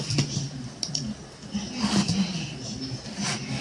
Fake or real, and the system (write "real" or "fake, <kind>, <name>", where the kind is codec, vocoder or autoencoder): real